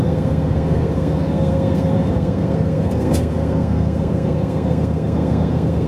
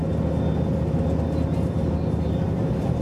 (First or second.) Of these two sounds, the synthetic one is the first